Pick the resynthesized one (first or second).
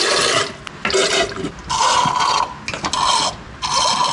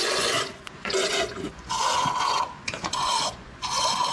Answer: second